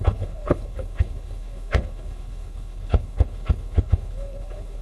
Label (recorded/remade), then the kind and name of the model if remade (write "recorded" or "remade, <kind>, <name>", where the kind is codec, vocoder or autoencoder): remade, codec, HILCodec